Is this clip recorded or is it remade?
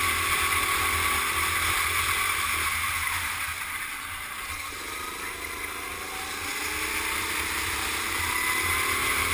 recorded